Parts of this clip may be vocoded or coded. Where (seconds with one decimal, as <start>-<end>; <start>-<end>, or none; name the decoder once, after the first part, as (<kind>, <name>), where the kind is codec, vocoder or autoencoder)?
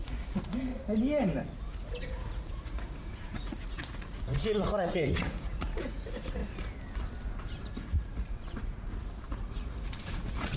0.0-0.7 (vocoder, Vocos); 1.8-6.4; 7.7-10.6